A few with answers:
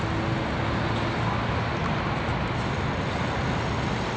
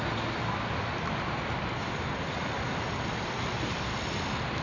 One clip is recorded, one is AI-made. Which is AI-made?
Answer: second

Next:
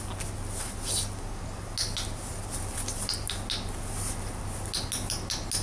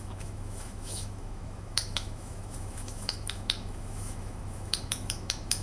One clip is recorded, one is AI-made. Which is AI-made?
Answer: second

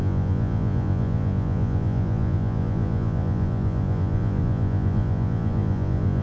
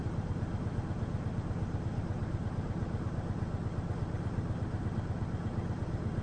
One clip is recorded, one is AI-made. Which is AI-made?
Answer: first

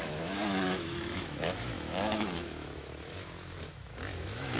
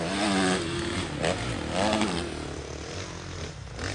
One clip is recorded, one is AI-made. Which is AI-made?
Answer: first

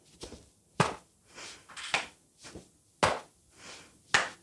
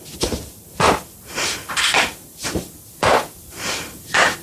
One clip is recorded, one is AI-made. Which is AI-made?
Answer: second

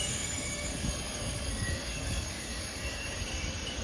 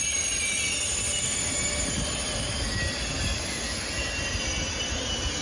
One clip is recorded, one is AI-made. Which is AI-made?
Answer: first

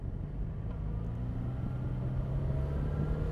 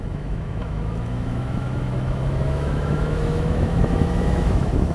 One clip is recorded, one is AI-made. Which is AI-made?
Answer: second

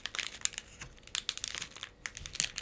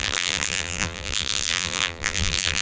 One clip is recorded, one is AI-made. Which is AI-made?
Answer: second